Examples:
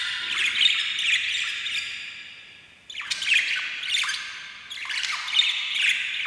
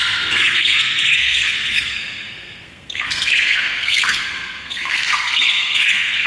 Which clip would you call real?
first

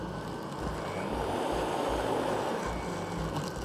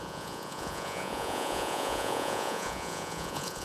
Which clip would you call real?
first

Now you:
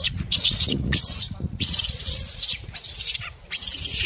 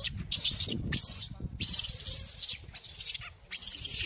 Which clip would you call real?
second